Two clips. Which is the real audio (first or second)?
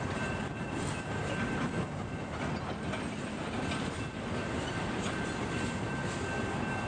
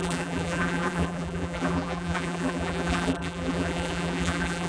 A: first